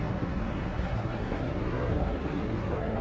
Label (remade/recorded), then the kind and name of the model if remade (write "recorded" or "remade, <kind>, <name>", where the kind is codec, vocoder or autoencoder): remade, codec, SNAC